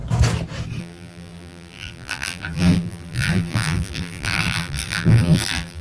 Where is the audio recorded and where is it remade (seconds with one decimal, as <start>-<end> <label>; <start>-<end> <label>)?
0.0-0.8 recorded; 0.8-5.8 remade